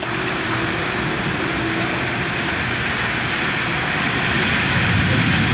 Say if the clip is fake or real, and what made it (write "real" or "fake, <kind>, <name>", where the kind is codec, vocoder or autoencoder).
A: fake, vocoder, BigVGAN v2